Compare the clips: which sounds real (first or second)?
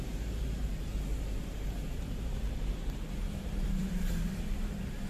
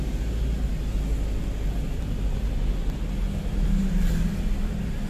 second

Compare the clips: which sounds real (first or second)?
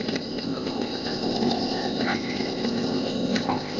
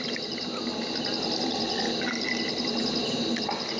second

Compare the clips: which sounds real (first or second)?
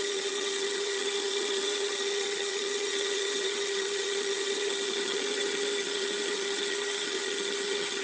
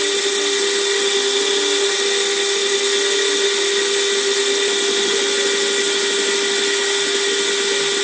second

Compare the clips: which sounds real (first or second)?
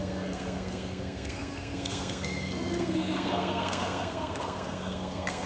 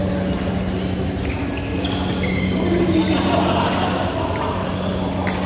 second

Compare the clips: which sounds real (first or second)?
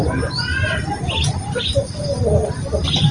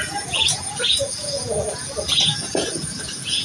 first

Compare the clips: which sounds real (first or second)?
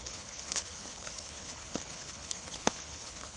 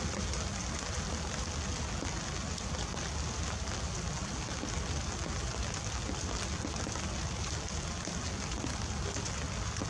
second